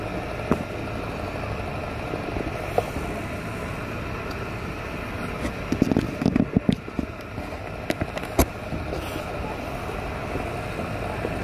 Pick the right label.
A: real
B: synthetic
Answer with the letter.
A